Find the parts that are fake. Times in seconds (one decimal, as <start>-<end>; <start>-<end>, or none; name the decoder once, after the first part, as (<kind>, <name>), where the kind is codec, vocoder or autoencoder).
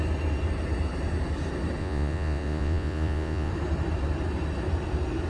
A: 1.8-3.5 (vocoder, Vocos)